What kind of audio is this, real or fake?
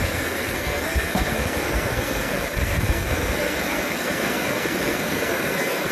fake